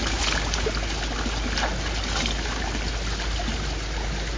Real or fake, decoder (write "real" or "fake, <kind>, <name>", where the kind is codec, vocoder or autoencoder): real